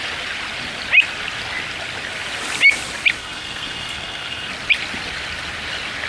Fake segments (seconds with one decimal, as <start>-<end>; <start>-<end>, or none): 3.2-4.5